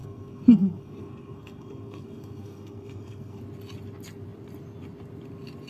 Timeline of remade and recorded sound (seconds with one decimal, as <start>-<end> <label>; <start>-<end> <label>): 0.0-3.4 remade; 3.4-5.7 recorded